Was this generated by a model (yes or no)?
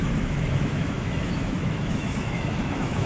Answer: yes